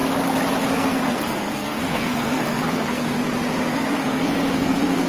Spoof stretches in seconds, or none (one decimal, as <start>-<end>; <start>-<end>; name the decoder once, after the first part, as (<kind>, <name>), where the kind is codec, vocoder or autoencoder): 0.6-3.2 (codec, SNAC); 3.7-5.1